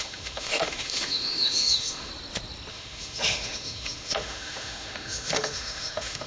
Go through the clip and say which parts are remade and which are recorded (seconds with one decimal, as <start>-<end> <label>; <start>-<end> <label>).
0.0-2.1 remade; 2.1-2.7 recorded; 2.7-6.3 remade